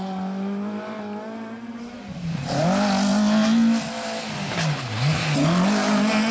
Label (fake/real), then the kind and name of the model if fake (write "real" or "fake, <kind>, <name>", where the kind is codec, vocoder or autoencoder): real